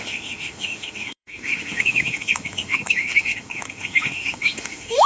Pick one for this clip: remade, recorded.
remade